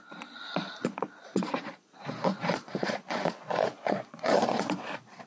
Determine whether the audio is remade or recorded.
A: remade